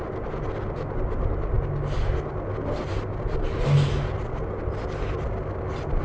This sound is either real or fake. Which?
real